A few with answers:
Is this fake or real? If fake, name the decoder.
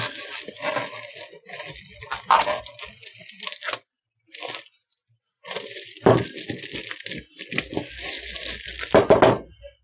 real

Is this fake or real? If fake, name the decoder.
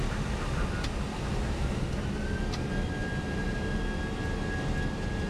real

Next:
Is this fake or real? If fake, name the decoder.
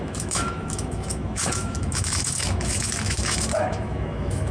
fake, autoencoder, DAC-VAE